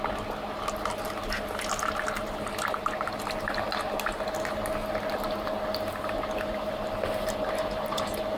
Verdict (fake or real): real